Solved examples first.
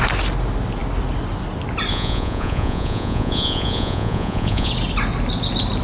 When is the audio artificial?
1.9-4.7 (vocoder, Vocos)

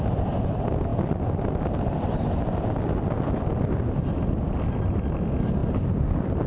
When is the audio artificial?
none

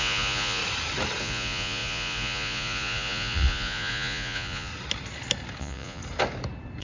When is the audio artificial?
0.0-0.6 (vocoder, Vocos); 1.2-4.7; 5.6-6.0

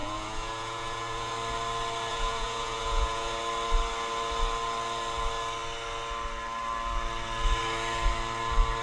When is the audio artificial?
0.0-1.3 (vocoder, Vocos); 2.1-3.4

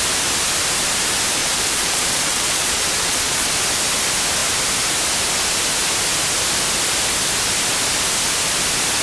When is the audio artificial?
1.4-3.5 (vocoder, Vocos)

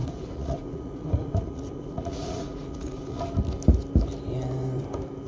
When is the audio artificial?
0.0-3.2 (vocoder, Vocos)

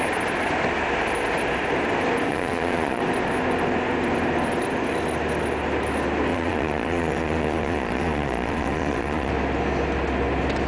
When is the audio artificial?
2.3-3.0 (vocoder, Vocos); 6.3-9.3